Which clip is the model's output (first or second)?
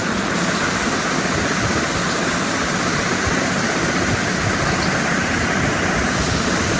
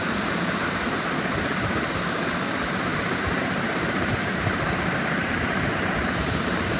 second